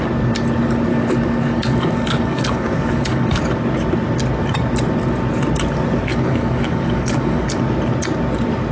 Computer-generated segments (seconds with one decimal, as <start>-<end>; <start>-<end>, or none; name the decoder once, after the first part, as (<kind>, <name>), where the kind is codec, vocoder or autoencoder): 0.9-3.4 (codec, DAC); 6.1-7.5